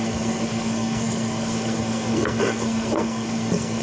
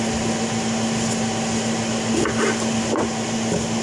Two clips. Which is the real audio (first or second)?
second